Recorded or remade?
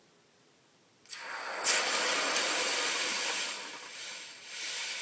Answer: recorded